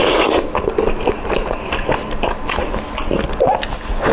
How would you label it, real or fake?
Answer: real